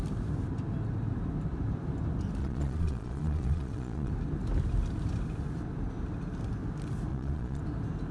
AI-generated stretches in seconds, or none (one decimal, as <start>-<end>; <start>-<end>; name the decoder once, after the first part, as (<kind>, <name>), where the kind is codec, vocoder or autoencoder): 2.4-4.1 (vocoder, Vocos); 7.1-7.6